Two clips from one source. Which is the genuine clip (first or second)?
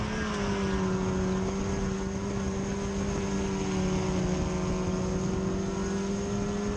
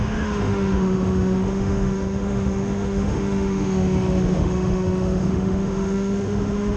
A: first